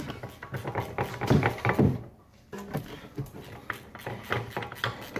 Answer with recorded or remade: recorded